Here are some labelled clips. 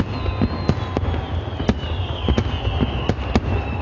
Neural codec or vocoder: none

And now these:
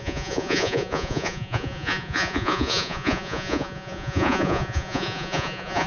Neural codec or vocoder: vocoder, Vocos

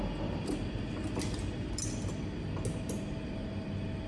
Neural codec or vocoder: none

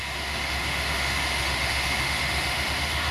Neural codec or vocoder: autoencoder, DAC-VAE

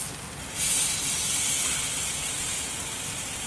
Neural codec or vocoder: none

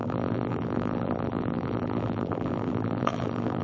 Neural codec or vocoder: vocoder, BigVGAN v2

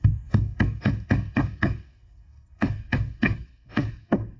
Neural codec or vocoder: codec, SNAC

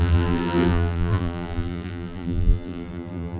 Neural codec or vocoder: vocoder, BigVGAN v2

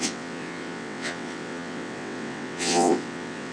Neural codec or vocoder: vocoder, WaveNeXt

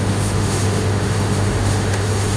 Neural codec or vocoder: autoencoder, DAC-VAE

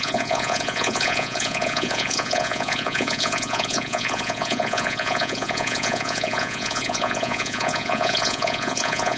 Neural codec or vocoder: vocoder, Vocos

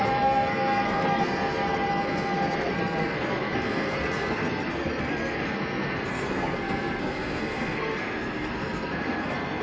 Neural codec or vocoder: codec, SNAC